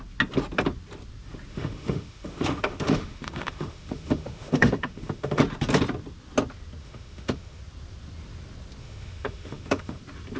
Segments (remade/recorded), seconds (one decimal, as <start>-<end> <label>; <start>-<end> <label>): 0.0-1.5 recorded; 1.5-5.4 remade; 5.4-6.8 recorded; 6.8-7.6 remade; 7.6-8.8 recorded; 8.8-10.0 remade; 10.0-10.4 recorded